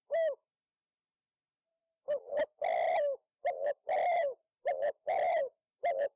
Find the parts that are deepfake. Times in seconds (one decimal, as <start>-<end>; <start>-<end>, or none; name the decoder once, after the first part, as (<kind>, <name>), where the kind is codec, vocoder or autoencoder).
none